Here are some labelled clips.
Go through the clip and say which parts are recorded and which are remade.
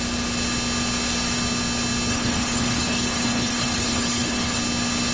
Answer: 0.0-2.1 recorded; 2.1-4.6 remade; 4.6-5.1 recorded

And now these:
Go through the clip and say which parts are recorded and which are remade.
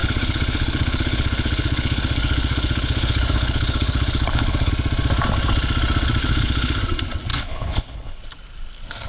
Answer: 0.0-4.7 remade; 4.7-6.2 recorded; 6.2-6.8 remade; 6.8-7.3 recorded; 7.3-8.2 remade; 8.2-9.1 recorded